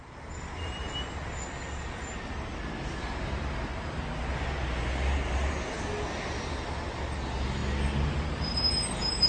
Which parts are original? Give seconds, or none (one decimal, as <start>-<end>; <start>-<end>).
0.0-9.3